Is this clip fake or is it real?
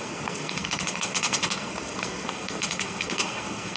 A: fake